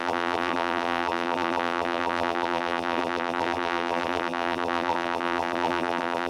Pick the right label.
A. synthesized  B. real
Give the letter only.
A